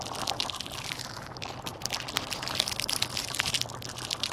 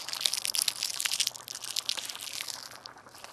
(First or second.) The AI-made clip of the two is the first